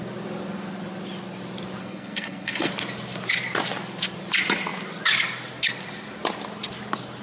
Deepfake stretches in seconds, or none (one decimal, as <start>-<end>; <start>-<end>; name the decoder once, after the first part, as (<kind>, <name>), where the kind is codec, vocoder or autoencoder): 1.8-2.7 (codec, SNAC)